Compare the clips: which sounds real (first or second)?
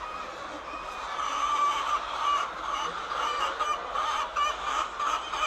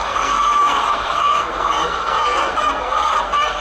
first